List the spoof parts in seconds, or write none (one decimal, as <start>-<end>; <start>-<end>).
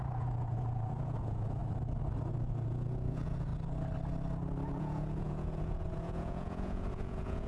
0.0-1.6; 2.3-3.5; 4.8-7.5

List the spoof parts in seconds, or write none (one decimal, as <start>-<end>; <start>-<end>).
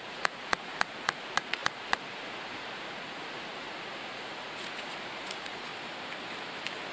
0.0-5.7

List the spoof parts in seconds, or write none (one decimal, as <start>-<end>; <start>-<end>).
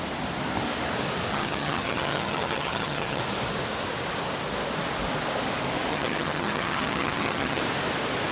1.3-3.2; 5.9-7.6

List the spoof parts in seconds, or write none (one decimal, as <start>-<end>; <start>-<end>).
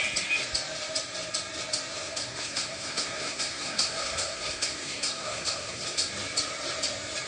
1.9-6.1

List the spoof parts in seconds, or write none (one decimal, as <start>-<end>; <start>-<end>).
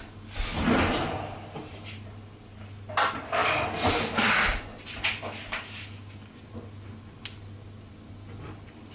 none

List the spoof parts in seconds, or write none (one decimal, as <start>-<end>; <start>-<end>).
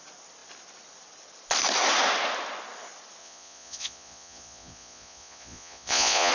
3.2-6.3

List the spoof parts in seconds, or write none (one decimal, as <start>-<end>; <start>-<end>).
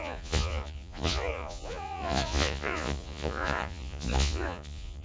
0.0-5.0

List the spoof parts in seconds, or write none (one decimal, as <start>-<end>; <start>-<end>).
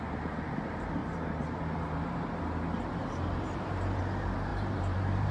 1.0-2.4; 3.0-4.0; 4.5-5.3